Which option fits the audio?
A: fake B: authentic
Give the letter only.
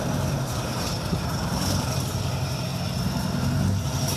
A